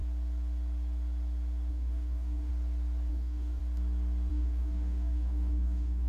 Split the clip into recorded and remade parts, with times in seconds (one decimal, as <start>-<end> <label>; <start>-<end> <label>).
0.0-1.7 recorded; 1.7-2.5 remade; 2.5-3.1 recorded; 3.1-3.6 remade; 3.6-4.3 recorded; 4.3-6.1 remade